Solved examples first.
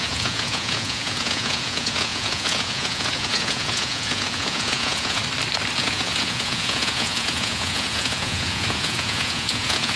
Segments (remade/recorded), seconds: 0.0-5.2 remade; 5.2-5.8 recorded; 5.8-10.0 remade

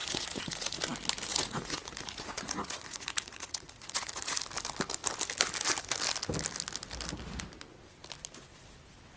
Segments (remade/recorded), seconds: 0.0-0.8 remade; 0.8-1.3 recorded; 1.3-4.4 remade; 4.4-9.2 recorded